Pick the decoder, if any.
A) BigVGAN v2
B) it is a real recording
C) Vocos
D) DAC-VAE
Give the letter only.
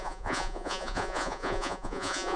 C